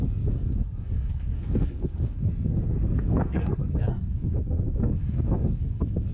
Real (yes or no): no